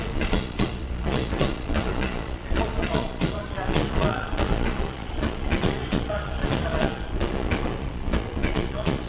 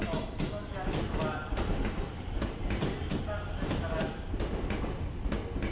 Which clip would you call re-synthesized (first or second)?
first